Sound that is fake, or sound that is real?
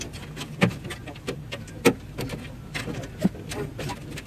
real